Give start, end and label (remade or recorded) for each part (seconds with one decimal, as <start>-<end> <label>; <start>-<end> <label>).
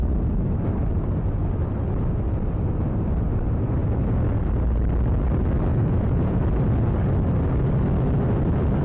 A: 0.0-5.7 recorded; 5.7-6.4 remade; 6.4-8.8 recorded